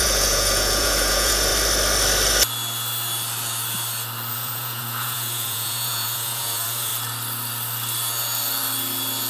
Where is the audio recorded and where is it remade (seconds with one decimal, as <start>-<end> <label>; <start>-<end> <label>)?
0.0-1.5 remade; 1.5-4.3 recorded; 4.3-6.9 remade; 6.9-9.3 recorded